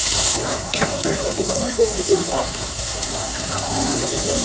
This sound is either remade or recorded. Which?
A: remade